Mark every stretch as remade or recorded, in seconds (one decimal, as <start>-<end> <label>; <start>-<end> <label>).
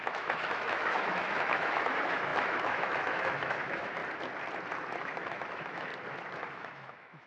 0.0-4.0 remade; 4.0-5.0 recorded; 5.0-5.9 remade; 5.9-6.5 recorded; 6.5-7.3 remade